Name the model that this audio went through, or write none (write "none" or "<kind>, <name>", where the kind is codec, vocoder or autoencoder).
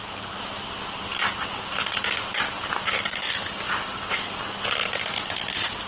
none